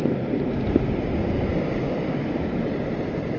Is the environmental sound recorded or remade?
recorded